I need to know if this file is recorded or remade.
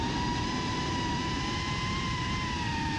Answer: remade